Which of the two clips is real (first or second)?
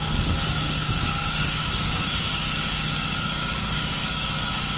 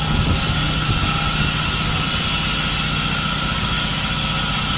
second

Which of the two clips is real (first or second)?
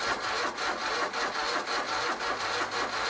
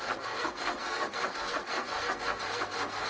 first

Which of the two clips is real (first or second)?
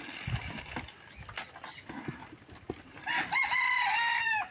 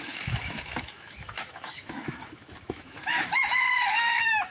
first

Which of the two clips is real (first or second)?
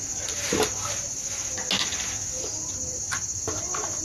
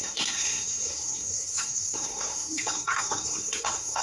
first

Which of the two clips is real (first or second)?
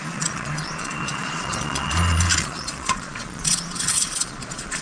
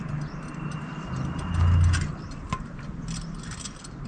second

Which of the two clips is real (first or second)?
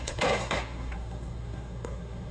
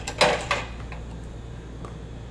second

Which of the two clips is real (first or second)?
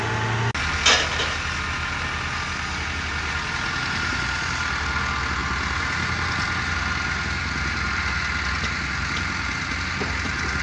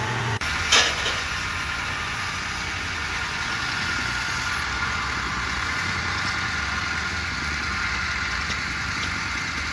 first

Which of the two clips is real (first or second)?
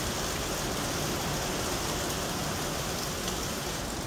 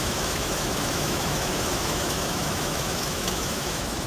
first